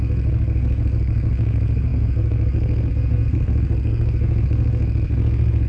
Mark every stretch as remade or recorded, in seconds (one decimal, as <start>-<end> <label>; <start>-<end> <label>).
0.0-5.7 remade